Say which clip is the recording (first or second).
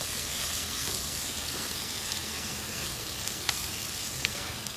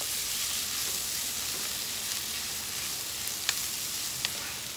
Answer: second